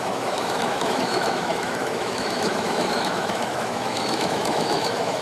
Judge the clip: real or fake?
fake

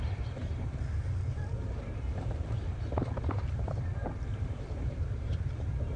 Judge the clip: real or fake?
fake